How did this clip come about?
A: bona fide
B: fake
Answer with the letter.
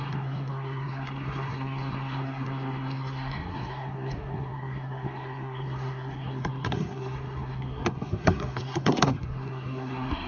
B